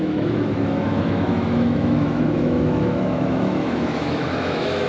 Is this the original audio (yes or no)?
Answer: no